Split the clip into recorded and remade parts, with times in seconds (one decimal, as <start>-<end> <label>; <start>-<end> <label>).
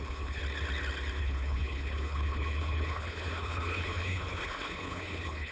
0.0-0.4 remade; 0.4-1.2 recorded; 1.2-5.5 remade